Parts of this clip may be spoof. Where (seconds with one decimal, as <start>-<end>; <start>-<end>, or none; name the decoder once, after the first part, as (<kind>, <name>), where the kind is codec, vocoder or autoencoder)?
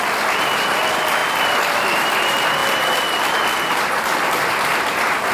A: none